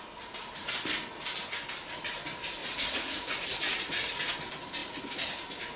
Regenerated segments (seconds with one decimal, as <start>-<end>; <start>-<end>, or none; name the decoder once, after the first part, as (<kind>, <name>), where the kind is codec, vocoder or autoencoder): 2.6-4.2 (vocoder, Vocos)